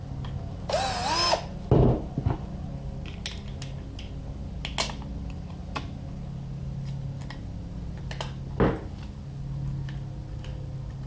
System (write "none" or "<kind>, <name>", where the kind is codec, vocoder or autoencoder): none